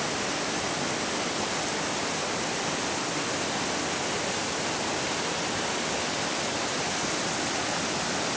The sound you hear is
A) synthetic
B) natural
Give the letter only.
B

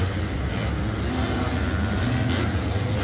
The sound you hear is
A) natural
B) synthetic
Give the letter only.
A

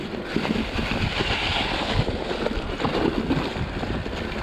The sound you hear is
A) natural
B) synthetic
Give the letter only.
A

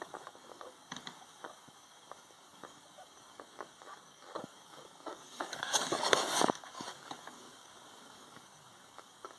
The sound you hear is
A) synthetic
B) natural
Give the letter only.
A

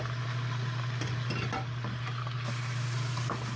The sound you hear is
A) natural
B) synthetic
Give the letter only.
A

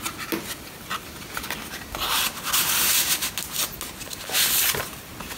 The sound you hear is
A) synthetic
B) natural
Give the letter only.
B